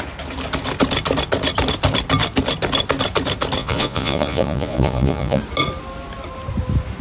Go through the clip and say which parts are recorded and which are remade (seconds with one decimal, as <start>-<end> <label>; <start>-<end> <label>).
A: 0.0-3.6 recorded; 3.6-5.4 remade; 5.4-7.0 recorded